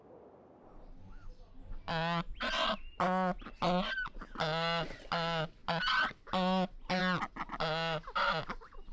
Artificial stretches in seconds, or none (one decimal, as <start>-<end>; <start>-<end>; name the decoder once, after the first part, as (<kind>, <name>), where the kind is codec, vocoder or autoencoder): none